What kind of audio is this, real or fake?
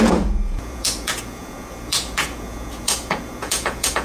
fake